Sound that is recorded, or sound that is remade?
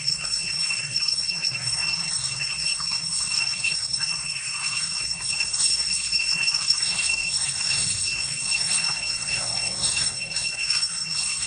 remade